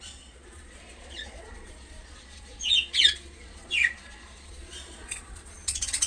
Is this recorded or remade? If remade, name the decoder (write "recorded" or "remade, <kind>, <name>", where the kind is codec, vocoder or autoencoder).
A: remade, vocoder, Vocos